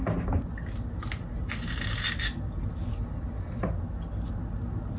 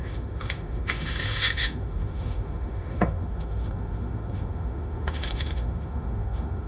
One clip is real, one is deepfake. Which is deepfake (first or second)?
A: second